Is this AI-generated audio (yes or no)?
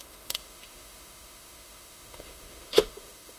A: yes